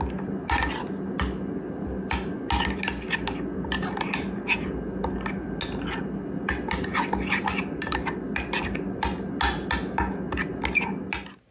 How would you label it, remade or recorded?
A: recorded